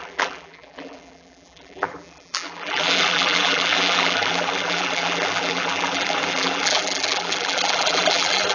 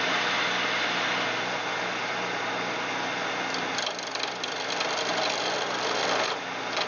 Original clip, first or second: second